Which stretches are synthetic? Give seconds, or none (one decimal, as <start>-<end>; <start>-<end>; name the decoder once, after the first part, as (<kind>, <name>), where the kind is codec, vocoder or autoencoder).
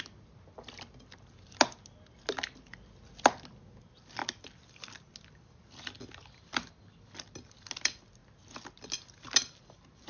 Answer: none